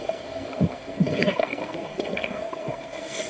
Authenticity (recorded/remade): remade